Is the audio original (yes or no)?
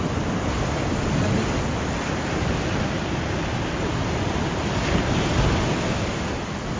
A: yes